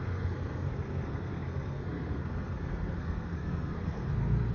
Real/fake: fake